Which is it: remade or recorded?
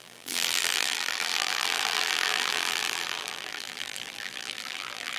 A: remade